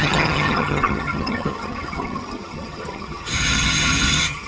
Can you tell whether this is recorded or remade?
remade